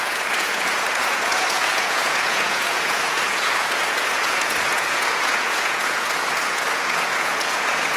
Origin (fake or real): fake